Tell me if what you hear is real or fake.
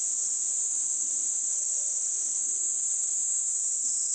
real